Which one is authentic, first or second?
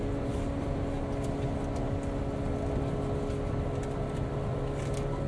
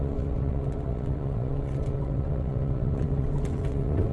first